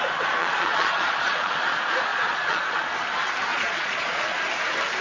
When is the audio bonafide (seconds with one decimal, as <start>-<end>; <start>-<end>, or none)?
0.0-0.4; 1.6-2.1; 2.9-3.5; 4.2-5.0